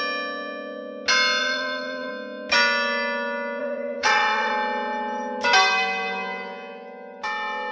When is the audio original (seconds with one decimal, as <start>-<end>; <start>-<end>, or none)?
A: 0.0-1.4; 2.1-3.6; 4.5-7.7